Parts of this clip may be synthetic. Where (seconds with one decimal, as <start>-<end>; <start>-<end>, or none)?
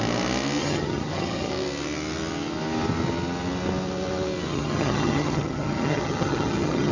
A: 0.6-1.5; 4.5-6.9